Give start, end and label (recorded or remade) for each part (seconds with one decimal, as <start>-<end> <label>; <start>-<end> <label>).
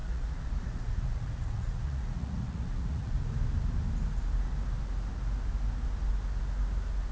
0.0-3.2 remade; 3.2-7.1 recorded